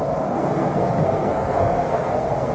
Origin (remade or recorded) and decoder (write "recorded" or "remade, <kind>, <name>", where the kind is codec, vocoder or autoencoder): remade, codec, SNAC